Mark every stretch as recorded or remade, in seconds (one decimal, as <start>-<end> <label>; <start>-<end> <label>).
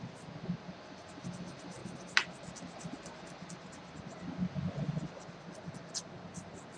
0.0-6.8 recorded